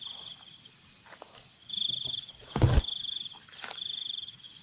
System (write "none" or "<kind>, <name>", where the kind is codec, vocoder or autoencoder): none